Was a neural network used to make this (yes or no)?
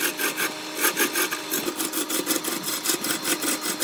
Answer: no